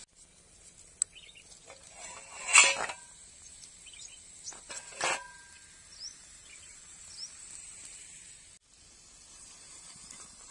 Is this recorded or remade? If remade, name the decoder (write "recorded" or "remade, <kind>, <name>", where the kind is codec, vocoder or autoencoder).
recorded